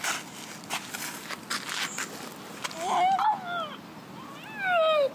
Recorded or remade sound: recorded